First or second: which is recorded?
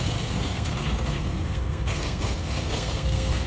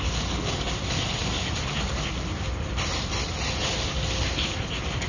second